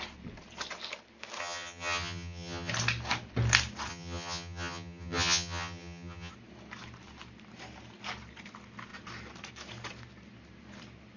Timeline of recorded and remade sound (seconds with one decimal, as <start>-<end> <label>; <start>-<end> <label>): 0.0-1.4 recorded; 1.4-2.7 remade; 2.7-3.9 recorded; 3.9-6.3 remade; 6.3-11.2 recorded